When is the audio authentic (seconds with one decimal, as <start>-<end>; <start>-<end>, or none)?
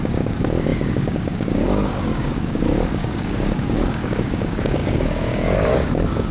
none